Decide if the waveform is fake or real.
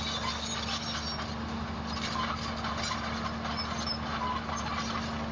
real